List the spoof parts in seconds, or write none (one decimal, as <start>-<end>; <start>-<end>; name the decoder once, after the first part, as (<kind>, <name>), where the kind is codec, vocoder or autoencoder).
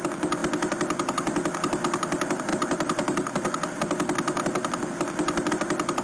none